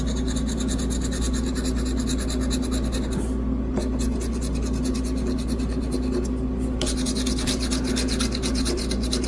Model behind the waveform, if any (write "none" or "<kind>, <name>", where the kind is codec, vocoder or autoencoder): none